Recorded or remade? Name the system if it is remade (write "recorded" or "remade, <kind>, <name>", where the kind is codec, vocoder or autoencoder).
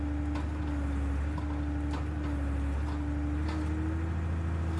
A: recorded